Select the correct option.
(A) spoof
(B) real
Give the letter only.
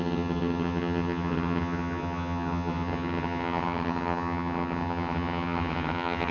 A